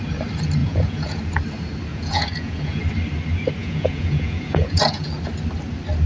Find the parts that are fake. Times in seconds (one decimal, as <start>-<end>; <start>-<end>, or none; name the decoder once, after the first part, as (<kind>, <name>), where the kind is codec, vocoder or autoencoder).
0.6-1.2 (vocoder, Vocos); 1.9-2.8; 3.6-5.1